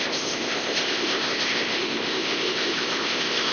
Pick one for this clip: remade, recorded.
remade